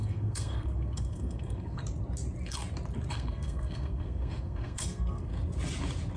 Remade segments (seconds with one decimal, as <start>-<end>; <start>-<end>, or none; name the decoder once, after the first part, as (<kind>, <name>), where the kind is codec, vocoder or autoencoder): 0.0-1.8 (codec, SNAC); 3.1-5.3